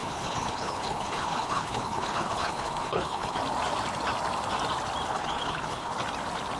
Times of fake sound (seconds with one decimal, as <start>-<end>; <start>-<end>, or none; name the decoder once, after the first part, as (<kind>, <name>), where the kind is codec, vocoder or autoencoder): 0.0-3.4 (codec, HILCodec); 5.1-5.9